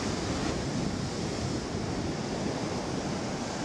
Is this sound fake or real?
real